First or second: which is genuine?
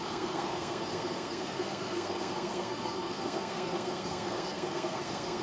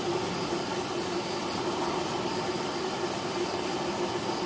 second